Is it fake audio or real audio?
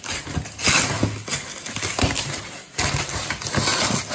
real